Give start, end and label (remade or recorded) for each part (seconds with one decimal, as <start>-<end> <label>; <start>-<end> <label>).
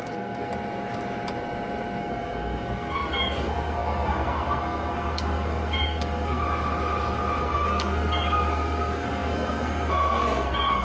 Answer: 0.0-0.5 remade; 0.5-2.0 recorded; 2.0-6.4 remade; 6.4-7.4 recorded; 7.4-10.8 remade